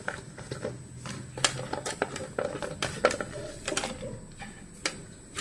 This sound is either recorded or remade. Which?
recorded